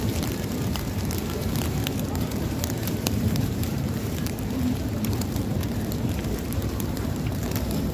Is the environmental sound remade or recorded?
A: remade